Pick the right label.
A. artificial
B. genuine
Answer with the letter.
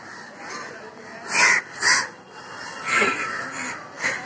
B